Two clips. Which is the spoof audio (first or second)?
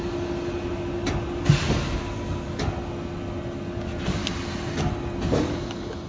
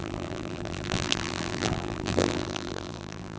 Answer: second